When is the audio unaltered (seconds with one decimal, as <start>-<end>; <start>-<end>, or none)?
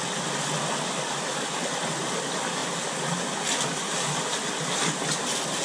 0.0-5.6